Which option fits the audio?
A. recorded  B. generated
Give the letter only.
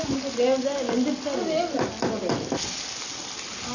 A